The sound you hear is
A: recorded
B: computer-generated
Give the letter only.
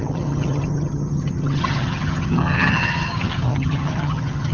B